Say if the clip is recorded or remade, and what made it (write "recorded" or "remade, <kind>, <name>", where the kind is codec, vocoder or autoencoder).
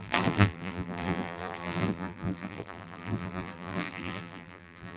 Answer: remade, vocoder, BigVGAN v2